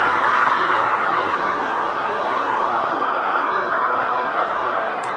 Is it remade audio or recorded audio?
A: remade